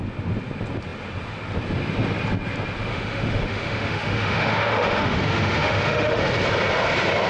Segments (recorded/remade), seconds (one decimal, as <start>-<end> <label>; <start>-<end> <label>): 0.0-2.9 recorded; 2.9-6.2 remade; 6.2-7.3 recorded